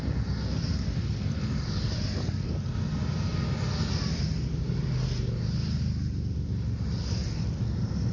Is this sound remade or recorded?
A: recorded